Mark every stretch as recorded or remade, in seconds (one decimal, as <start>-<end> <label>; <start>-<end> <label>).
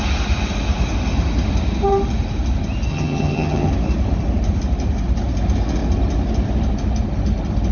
0.0-2.9 recorded; 2.9-3.7 remade; 3.7-7.7 recorded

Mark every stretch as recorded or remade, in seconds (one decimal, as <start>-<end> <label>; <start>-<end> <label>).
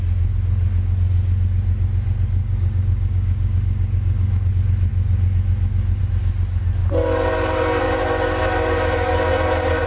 0.0-2.4 recorded; 2.4-4.5 remade; 4.5-9.9 recorded